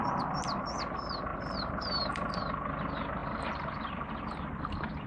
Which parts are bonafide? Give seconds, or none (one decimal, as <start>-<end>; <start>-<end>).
0.0-3.2; 4.1-5.1

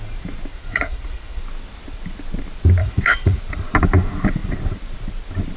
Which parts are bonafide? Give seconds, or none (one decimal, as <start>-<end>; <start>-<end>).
0.0-0.5; 1.4-2.8; 3.4-5.6

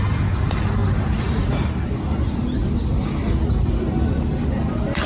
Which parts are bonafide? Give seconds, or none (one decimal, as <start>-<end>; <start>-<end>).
0.0-5.1

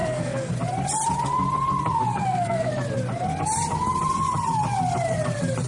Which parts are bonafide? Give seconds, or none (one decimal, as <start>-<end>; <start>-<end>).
0.5-2.2; 2.7-5.7

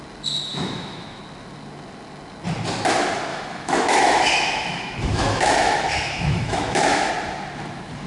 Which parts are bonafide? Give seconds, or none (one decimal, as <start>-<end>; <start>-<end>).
0.0-0.5; 1.2-3.3; 7.1-8.1

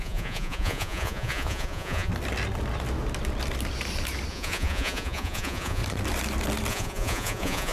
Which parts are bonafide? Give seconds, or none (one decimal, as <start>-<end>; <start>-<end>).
2.1-4.3; 5.8-6.7

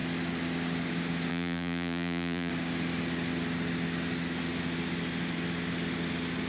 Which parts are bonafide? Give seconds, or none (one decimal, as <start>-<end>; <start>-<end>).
0.0-1.3; 2.5-6.5